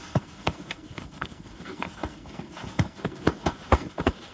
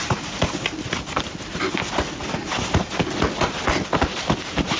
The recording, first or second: second